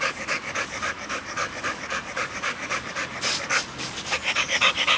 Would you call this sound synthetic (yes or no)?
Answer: yes